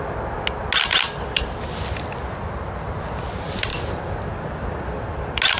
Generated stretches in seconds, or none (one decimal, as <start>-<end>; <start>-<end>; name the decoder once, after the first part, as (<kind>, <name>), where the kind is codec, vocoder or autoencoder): none